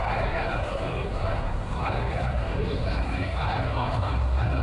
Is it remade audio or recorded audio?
remade